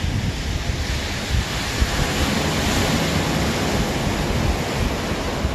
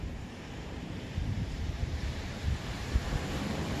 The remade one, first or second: second